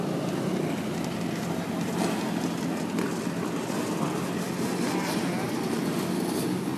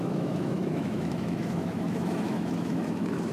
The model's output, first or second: second